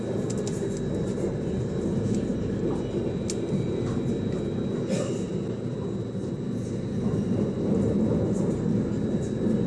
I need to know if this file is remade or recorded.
recorded